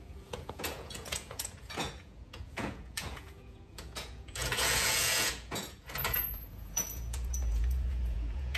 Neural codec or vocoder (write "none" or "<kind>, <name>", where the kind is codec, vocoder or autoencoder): vocoder, Vocos